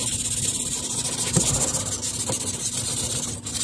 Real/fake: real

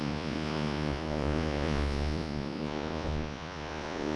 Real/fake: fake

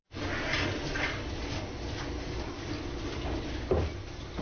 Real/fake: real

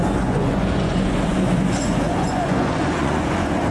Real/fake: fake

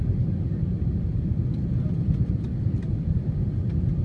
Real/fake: real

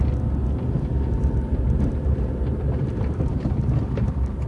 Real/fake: real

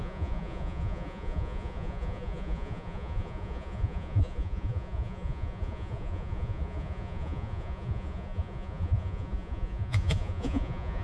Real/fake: fake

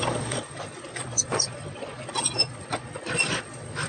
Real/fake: fake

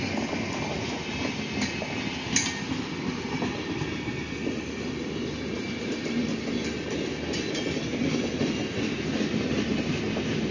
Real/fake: real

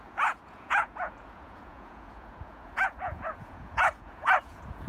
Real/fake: fake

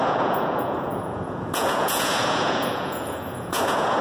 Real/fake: fake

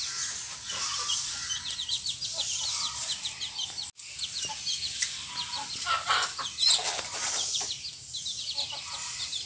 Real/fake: real